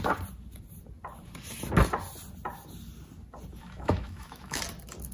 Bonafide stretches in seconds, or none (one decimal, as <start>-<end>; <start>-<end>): 0.0-3.6; 4.6-5.1